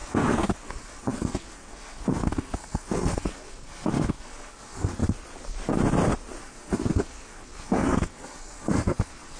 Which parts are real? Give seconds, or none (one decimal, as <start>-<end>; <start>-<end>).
5.0-6.4